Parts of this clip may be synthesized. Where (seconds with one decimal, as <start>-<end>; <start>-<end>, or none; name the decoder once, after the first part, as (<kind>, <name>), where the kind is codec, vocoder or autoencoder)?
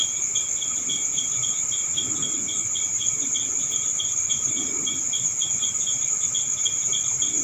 3.9-4.5 (vocoder, BigVGAN v2)